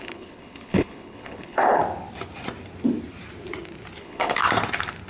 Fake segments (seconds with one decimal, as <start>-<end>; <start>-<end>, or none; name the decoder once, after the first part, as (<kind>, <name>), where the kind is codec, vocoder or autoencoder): 0.0-1.8 (codec, HILCodec); 4.0-4.4